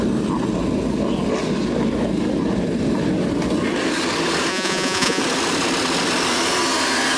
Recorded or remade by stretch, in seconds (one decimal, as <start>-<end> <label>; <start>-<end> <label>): 0.0-4.5 recorded; 4.5-5.2 remade; 5.2-7.2 recorded